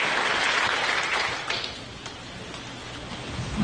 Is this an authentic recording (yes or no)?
yes